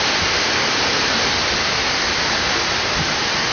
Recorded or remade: remade